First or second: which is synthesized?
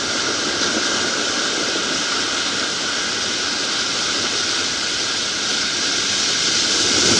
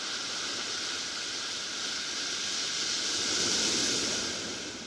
first